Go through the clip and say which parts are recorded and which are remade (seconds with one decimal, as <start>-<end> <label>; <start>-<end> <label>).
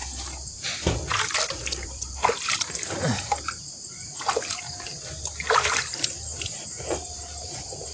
0.0-0.6 remade; 0.6-1.6 recorded; 1.6-4.6 remade; 4.6-7.9 recorded